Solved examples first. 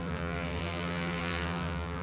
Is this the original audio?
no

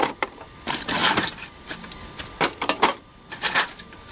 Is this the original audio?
no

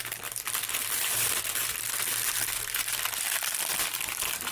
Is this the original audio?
no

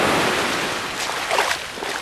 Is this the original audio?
yes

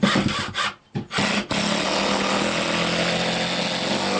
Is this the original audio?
yes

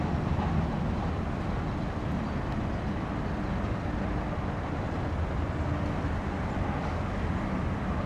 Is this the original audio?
yes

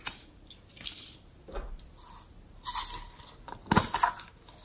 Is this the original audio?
yes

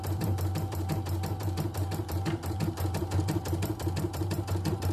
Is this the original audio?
no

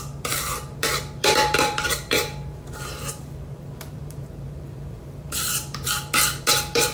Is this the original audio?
no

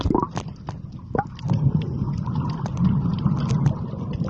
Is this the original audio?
yes